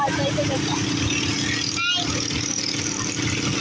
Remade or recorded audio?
recorded